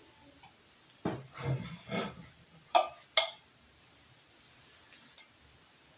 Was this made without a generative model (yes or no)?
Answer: yes